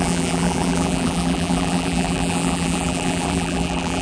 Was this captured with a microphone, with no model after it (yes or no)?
no